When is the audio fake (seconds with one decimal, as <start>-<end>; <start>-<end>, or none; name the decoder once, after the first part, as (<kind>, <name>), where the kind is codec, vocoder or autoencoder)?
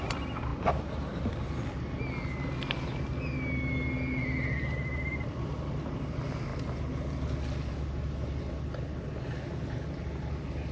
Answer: none